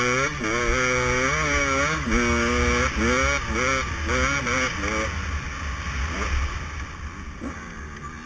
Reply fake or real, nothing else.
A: real